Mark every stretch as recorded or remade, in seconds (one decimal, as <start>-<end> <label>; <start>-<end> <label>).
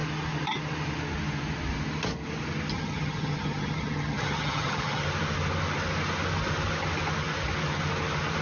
0.0-2.7 recorded; 2.7-5.0 remade; 5.0-8.4 recorded